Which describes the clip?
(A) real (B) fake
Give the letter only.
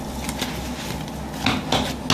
A